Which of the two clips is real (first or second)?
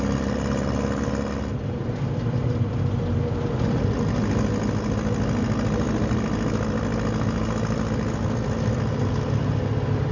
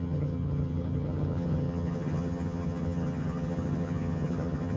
first